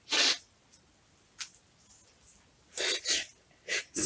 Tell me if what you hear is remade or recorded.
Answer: recorded